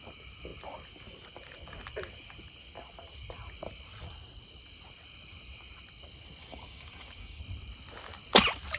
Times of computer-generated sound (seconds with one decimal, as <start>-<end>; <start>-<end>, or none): 6.4-7.4